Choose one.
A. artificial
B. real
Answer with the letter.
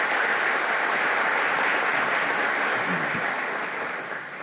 B